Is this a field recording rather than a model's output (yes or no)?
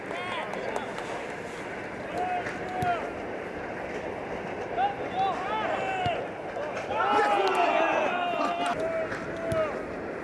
yes